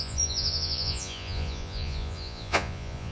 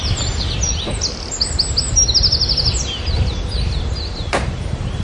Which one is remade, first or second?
first